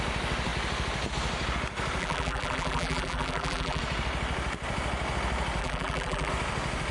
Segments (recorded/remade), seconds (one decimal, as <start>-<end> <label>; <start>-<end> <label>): 0.0-2.0 recorded; 2.0-3.8 remade; 3.8-5.6 recorded; 5.6-6.3 remade; 6.3-6.9 recorded